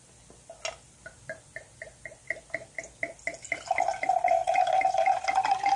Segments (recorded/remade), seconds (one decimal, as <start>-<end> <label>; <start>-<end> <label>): 0.0-4.4 recorded; 4.4-5.8 remade